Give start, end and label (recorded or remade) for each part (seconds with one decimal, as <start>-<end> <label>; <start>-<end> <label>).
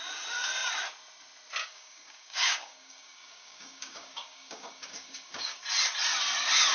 0.0-1.6 recorded; 1.6-5.6 remade; 5.6-6.7 recorded